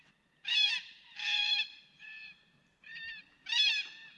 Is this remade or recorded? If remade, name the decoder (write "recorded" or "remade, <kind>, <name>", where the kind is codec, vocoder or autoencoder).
remade, vocoder, BigVGAN v2